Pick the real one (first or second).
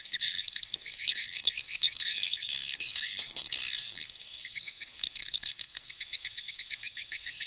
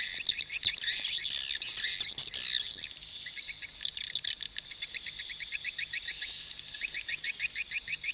second